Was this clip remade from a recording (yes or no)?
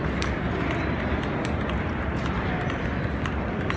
no